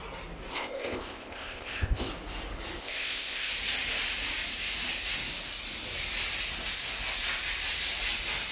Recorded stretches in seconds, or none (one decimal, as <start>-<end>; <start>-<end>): 0.0-0.5; 2.1-2.8; 3.5-8.5